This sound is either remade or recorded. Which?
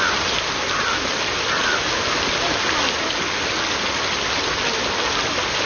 recorded